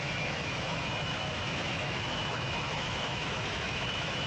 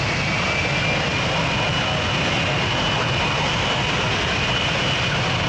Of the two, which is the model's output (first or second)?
first